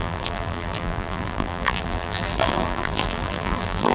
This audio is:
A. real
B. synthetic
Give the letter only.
B